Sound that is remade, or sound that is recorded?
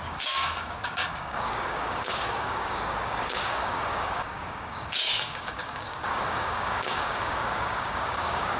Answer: remade